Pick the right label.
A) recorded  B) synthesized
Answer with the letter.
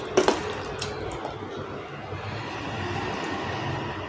A